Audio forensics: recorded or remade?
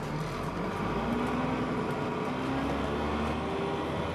recorded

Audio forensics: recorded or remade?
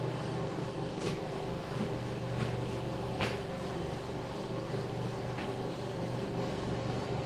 remade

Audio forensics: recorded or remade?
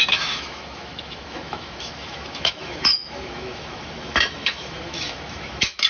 remade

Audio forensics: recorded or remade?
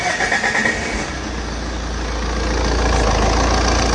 recorded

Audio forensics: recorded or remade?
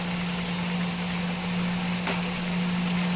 recorded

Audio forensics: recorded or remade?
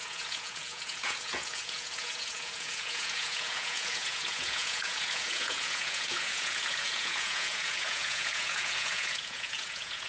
remade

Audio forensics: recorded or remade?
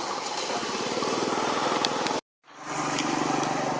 recorded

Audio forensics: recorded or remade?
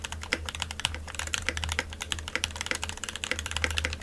recorded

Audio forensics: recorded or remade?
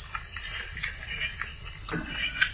recorded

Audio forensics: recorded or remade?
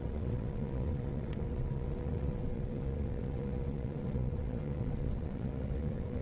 remade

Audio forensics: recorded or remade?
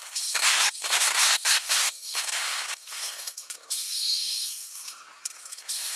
remade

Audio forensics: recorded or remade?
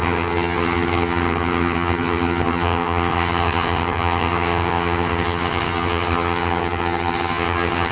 remade